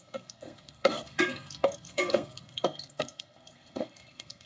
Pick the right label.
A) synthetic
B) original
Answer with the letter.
A